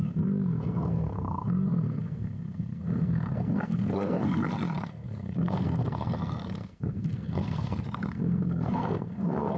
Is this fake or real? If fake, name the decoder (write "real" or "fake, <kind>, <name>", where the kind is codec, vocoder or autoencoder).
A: fake, codec, SNAC